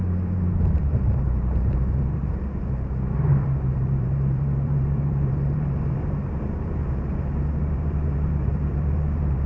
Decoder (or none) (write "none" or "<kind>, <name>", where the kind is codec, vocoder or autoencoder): vocoder, BigVGAN v2